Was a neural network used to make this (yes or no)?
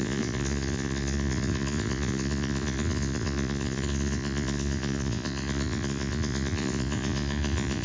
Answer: yes